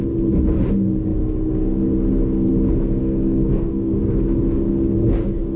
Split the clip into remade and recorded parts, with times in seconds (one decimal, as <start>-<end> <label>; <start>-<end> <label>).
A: 0.0-3.0 recorded; 3.0-4.0 remade; 4.0-5.6 recorded